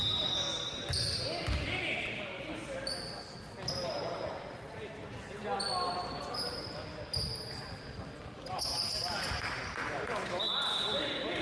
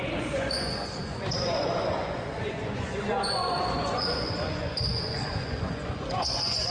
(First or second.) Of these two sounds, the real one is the first